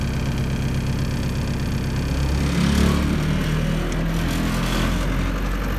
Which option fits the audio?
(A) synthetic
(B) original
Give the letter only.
B